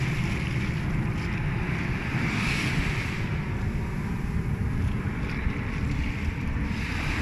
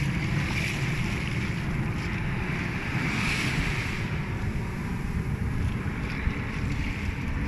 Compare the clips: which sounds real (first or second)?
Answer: first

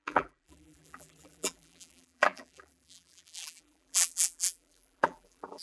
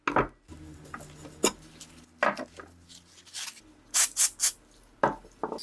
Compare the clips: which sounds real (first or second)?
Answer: second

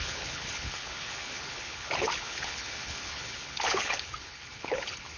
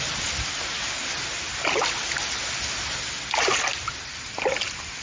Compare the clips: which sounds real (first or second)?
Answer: second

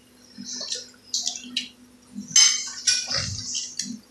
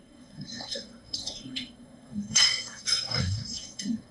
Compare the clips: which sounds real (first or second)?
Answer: first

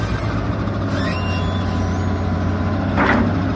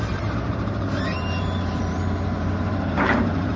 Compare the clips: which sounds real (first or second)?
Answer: first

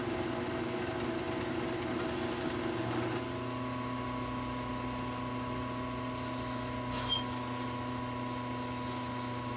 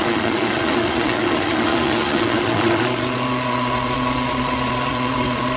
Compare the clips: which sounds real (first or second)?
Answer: first